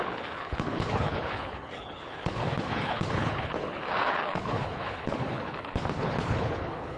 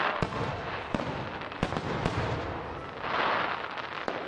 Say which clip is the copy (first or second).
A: first